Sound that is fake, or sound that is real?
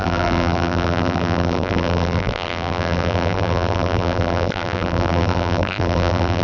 fake